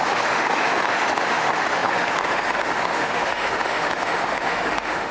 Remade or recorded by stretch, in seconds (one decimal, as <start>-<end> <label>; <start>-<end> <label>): 0.0-5.1 remade